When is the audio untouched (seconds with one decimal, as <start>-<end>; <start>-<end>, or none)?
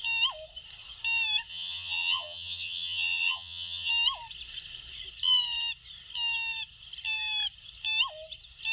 0.0-1.5; 3.9-8.7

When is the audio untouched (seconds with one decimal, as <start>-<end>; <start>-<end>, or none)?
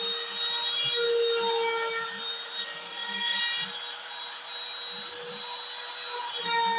0.0-2.6; 3.4-6.8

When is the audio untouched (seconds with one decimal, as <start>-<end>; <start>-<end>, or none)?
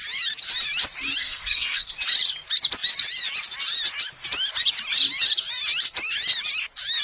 0.0-1.2; 1.9-7.0